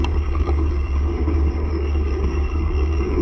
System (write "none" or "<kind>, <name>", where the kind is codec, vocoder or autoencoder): codec, DAC